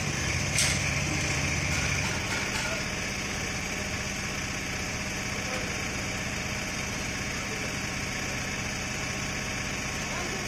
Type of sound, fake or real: real